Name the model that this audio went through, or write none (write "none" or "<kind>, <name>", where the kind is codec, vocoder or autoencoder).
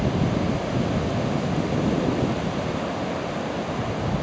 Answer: none